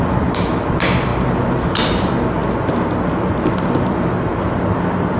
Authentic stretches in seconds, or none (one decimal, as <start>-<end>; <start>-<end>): 0.0-5.2